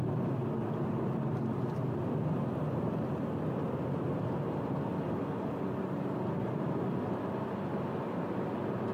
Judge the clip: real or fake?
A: real